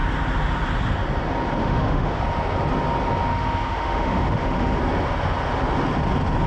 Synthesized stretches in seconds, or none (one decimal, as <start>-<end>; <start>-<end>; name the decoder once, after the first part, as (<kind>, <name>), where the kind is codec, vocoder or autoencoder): 1.6-2.2 (autoencoder, DAC-VAE); 3.3-4.8